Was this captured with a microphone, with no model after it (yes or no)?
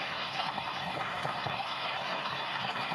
no